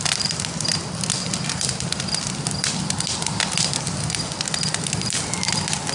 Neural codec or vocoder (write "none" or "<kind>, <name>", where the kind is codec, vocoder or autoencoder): none